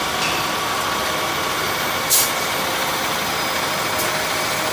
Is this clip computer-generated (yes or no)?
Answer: no